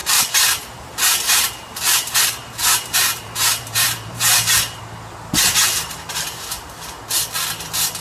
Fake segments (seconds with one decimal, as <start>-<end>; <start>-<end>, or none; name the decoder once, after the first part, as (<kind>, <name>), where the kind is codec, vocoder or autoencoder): 0.0-4.8 (vocoder, BigVGAN v2); 5.5-6.9